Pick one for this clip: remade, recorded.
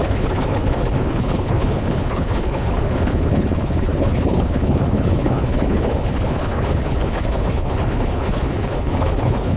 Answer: remade